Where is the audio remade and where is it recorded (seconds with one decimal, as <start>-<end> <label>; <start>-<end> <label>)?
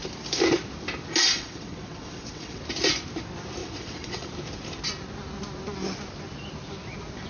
0.0-1.2 recorded; 1.2-2.6 remade; 2.6-3.6 recorded; 3.6-4.3 remade; 4.3-7.3 recorded